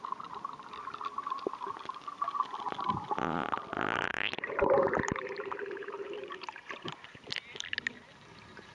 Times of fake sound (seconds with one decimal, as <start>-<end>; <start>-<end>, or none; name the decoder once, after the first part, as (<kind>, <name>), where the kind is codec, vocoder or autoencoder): 4.1-6.9 (vocoder, BigVGAN v2)